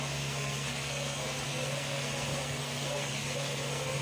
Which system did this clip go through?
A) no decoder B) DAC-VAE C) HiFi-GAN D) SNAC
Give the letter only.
D